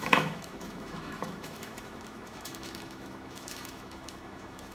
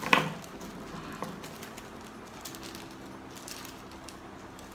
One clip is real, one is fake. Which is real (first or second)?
second